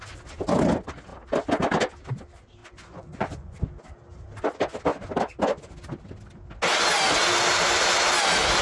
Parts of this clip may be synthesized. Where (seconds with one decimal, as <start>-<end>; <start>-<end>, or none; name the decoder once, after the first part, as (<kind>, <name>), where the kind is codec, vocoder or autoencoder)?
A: 2.6-3.6 (vocoder, Vocos)